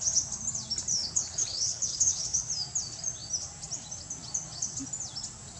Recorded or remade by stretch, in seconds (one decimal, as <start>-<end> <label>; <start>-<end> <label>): 0.0-0.9 recorded; 0.9-2.5 remade; 2.5-5.6 recorded

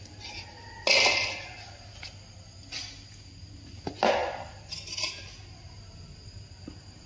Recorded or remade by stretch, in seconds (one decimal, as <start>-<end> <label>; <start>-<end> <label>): 0.0-7.1 recorded

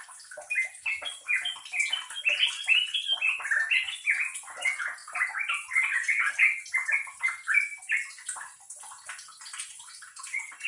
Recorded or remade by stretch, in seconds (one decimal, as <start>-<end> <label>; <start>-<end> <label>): 0.0-10.7 recorded

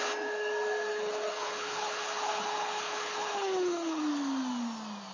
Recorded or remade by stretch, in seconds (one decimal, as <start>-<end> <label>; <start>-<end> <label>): 0.0-0.9 recorded; 0.9-4.0 remade; 4.0-5.1 recorded

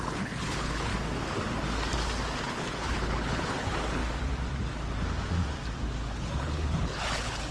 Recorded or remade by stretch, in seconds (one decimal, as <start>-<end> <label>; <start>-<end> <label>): 0.0-0.9 remade; 0.9-2.4 recorded; 2.4-4.0 remade; 4.0-6.1 recorded; 6.1-7.5 remade

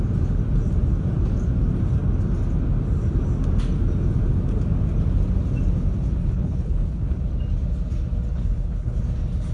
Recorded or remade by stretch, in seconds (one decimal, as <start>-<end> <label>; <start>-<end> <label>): 0.0-6.3 recorded; 6.3-7.2 remade; 7.2-8.3 recorded; 8.3-9.0 remade; 9.0-9.5 recorded

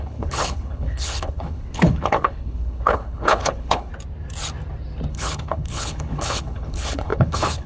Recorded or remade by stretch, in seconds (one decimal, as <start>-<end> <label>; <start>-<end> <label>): 0.0-3.9 remade; 3.9-5.1 recorded; 5.1-7.7 remade